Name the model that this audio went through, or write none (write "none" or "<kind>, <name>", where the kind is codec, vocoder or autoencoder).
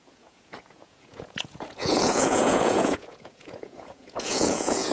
vocoder, Vocos